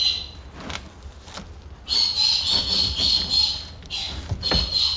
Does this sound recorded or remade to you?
recorded